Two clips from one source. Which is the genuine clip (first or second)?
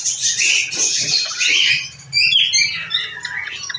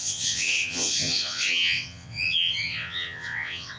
first